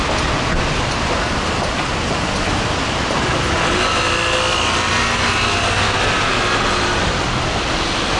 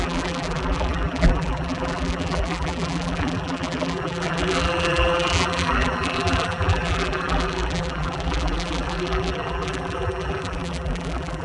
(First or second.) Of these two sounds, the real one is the first